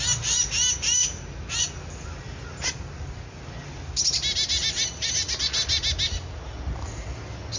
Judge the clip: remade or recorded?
recorded